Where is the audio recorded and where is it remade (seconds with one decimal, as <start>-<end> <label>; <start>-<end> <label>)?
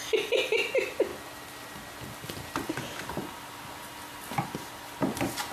0.0-5.5 recorded